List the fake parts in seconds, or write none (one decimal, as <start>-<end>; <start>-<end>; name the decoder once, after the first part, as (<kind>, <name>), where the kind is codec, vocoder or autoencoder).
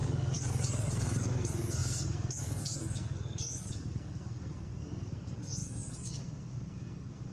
0.0-7.3 (codec, SNAC)